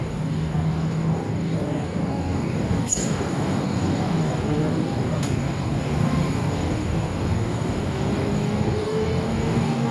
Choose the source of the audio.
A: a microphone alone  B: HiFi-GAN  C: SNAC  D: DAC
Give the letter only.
D